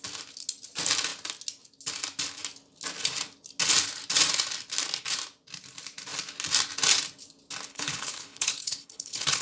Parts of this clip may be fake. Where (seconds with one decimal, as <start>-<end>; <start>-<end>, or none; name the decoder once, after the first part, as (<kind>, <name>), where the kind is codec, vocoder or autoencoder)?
7.7-9.4 (codec, HILCodec)